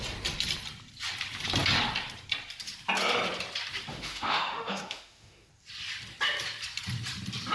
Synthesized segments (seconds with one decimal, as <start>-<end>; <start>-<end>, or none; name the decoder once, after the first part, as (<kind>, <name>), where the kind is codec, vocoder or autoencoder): 3.9-5.5 (autoencoder, DAC-VAE)